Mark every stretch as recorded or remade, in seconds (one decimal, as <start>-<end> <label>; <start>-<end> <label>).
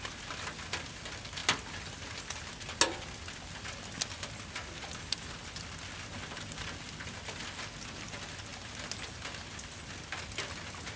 0.0-11.0 recorded